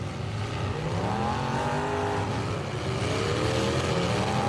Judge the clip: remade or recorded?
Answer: recorded